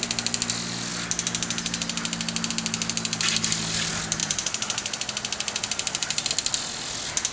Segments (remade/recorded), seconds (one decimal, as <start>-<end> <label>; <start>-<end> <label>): 0.0-4.2 recorded; 4.2-6.3 remade; 6.3-7.3 recorded